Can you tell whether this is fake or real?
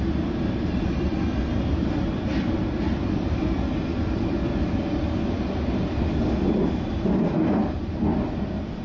fake